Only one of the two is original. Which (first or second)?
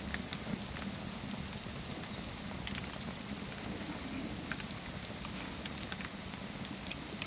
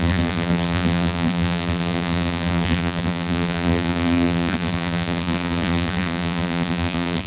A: first